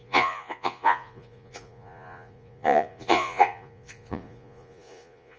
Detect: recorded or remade remade